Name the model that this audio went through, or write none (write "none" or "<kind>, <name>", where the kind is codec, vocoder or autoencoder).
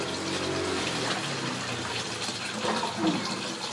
none